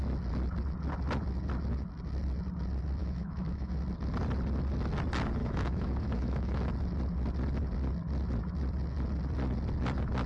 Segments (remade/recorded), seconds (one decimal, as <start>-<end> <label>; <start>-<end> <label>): 0.0-3.0 recorded; 3.0-3.7 remade; 3.7-5.4 recorded; 5.4-6.7 remade; 6.7-10.3 recorded